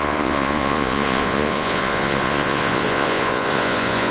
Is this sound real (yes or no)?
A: no